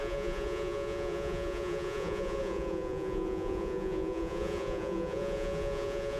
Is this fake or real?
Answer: fake